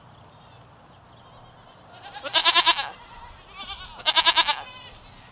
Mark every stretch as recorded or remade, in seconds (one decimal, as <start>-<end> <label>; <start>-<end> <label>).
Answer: 0.0-5.3 recorded

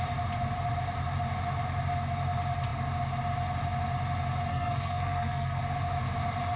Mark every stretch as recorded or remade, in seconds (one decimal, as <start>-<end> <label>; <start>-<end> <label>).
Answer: 0.0-4.5 recorded; 4.5-5.6 remade; 5.6-6.6 recorded

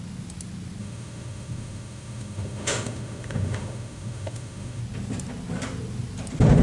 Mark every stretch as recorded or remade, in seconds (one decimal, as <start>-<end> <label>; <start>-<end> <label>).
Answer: 0.0-0.8 recorded; 0.8-4.8 remade; 4.8-6.6 recorded

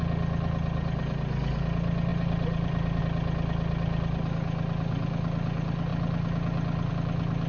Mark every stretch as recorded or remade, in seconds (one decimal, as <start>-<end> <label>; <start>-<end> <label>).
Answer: 0.0-2.1 recorded; 2.1-3.0 remade; 3.0-7.5 recorded

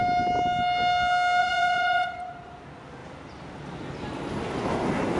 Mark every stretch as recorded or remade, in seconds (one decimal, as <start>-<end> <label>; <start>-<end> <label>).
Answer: 0.0-1.4 recorded; 1.4-2.6 remade; 2.6-5.2 recorded

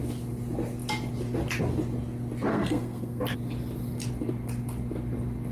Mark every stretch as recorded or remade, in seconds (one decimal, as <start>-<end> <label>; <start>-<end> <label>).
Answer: 0.0-2.5 recorded; 2.5-3.2 remade; 3.2-5.5 recorded